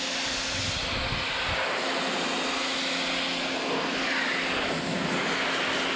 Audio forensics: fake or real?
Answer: real